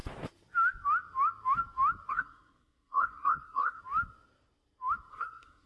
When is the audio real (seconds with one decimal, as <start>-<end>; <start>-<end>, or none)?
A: 0.0-2.1; 3.8-5.1